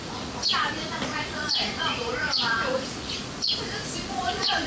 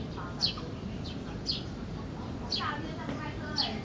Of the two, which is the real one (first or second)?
second